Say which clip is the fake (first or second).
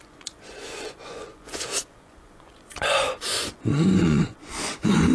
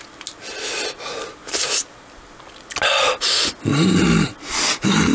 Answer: first